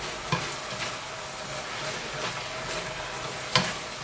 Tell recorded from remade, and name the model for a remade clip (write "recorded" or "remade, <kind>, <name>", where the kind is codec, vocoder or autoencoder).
recorded